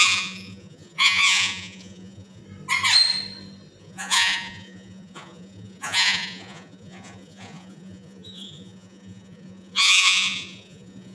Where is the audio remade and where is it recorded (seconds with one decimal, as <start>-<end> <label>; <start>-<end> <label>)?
0.0-2.4 remade; 2.4-3.8 recorded; 3.8-11.1 remade